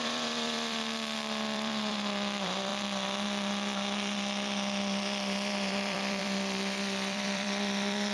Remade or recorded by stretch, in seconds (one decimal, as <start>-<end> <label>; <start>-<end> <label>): 0.0-8.1 remade